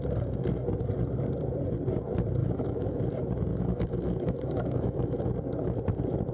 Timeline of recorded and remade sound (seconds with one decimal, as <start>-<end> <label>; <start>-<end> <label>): 0.0-2.4 recorded; 2.4-3.0 remade; 3.0-3.5 recorded; 3.5-5.2 remade; 5.2-6.3 recorded